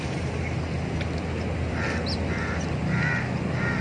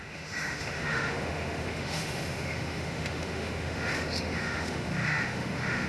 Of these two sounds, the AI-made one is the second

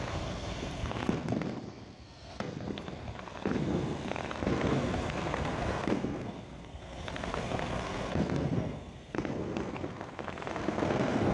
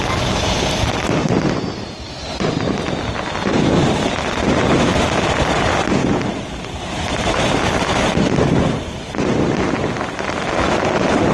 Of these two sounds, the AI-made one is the first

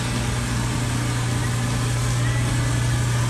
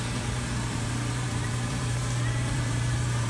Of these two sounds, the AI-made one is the second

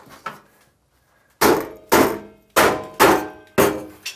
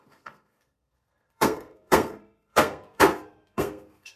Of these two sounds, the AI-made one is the second